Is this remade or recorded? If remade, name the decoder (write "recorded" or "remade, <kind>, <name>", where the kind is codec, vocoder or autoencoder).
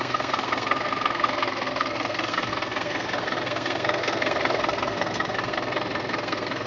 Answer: remade, codec, SNAC